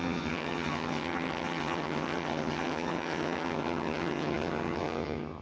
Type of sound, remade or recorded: remade